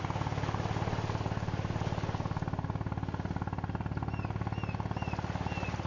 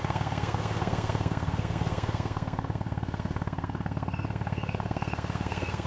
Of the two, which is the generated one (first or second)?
second